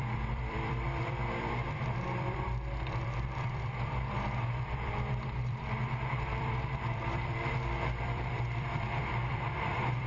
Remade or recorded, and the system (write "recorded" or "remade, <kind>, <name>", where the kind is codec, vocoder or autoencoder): remade, vocoder, BigVGAN v2